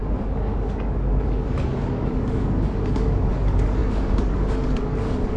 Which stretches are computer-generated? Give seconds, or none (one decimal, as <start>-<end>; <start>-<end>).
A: 0.0-5.4